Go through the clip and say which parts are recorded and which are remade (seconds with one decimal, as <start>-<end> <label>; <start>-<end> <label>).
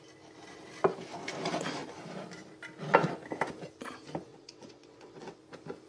0.0-4.3 recorded; 4.3-5.4 remade; 5.4-5.9 recorded